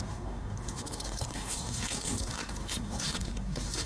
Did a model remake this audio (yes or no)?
yes